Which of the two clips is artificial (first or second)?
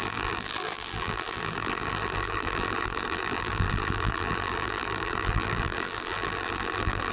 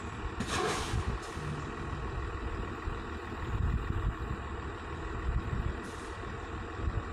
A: first